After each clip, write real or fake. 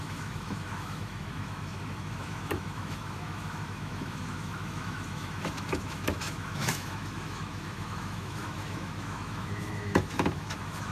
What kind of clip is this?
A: fake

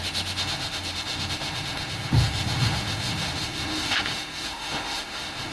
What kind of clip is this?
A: fake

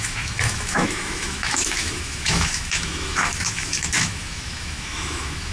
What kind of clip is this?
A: fake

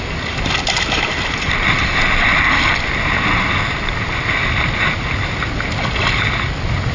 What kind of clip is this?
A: real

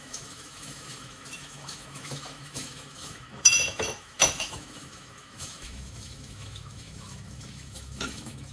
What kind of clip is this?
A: fake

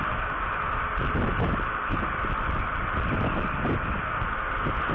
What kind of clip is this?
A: real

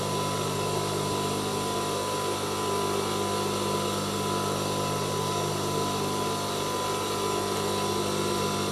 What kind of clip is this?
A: real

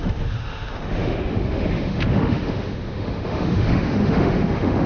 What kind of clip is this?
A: fake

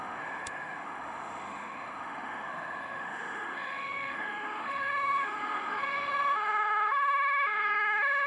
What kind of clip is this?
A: fake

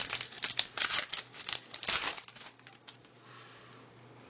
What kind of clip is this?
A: real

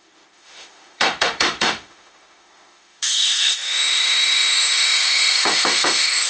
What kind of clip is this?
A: fake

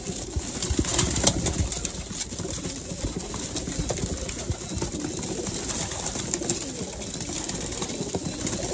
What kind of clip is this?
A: real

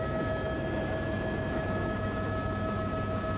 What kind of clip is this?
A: fake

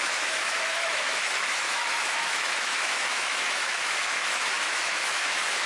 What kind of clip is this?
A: fake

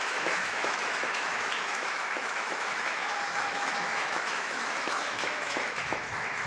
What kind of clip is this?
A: fake